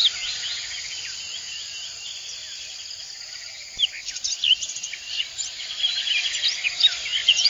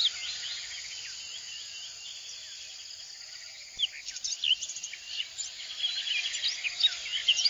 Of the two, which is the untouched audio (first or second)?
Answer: second